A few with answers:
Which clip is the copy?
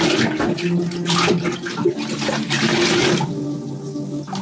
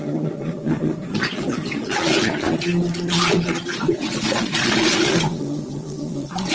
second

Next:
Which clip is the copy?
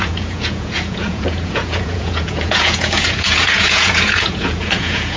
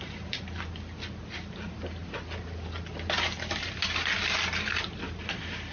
first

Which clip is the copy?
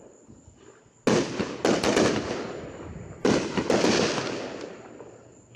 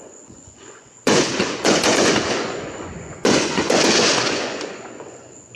second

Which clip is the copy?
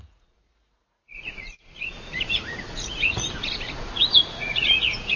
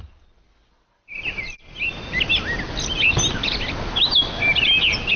first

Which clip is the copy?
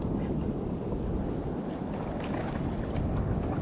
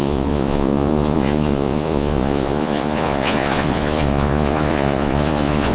second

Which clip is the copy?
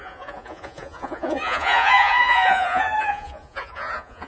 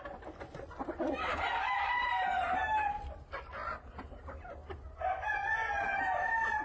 first